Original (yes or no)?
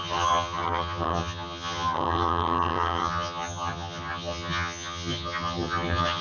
no